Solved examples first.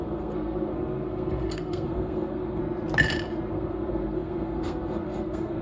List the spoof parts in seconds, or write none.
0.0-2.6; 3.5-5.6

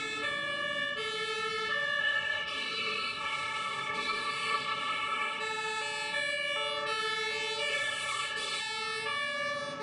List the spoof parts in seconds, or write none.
2.0-5.4; 7.7-8.6

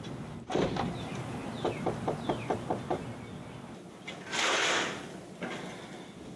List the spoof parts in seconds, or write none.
none